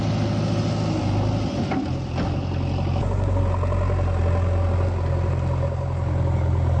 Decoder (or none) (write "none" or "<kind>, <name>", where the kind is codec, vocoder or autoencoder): none